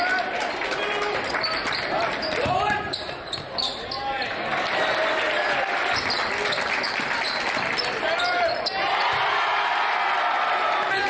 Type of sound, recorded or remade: recorded